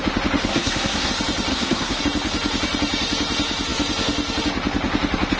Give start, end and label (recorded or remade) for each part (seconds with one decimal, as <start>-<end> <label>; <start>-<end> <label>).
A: 0.0-0.5 recorded; 0.5-1.1 remade; 1.1-1.5 recorded; 1.5-2.0 remade; 2.0-5.4 recorded